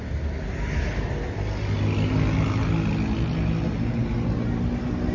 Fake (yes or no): no